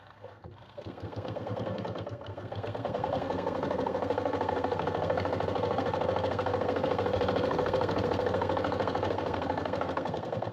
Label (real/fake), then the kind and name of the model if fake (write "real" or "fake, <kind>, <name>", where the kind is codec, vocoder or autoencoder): fake, codec, SNAC